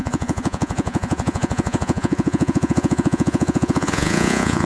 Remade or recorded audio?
remade